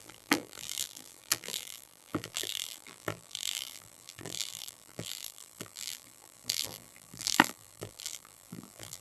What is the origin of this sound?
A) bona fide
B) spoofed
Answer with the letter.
B